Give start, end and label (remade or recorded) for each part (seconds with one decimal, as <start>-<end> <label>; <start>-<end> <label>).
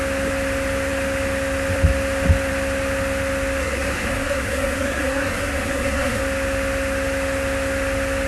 0.0-3.6 recorded; 3.6-6.2 remade; 6.2-8.3 recorded